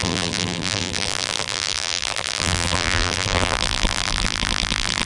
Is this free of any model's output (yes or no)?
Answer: no